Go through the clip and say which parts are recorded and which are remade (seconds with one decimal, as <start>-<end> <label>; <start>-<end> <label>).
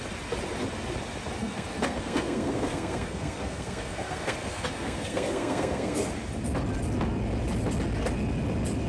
0.0-1.4 recorded; 1.4-6.1 remade; 6.1-8.9 recorded